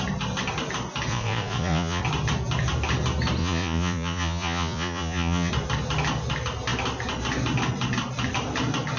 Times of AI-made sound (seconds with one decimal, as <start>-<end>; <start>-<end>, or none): 1.1-2.0; 3.4-5.5

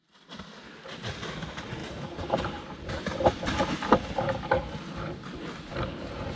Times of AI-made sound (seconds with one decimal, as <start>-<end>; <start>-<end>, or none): 1.8-3.7

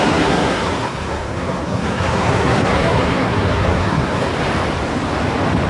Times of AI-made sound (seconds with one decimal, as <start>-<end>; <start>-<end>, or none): 0.0-4.3